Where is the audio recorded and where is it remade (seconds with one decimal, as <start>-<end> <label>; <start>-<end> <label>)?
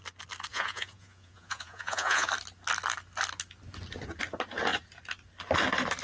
0.0-0.5 recorded; 0.5-2.3 remade; 2.3-6.0 recorded